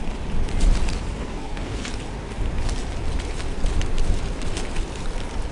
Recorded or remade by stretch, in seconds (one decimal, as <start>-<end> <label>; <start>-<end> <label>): 0.0-1.2 recorded; 1.2-1.9 remade; 1.9-5.5 recorded